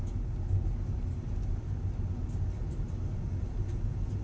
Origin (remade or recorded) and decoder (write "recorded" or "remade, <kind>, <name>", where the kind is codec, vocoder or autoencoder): recorded